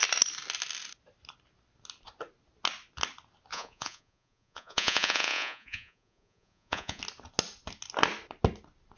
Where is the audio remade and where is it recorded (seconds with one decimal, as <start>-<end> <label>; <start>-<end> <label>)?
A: 0.0-3.5 recorded; 3.5-7.0 remade; 7.0-9.0 recorded